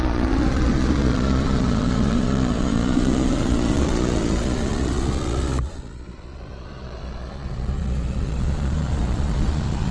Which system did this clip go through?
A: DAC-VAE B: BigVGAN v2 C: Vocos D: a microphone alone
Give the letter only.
C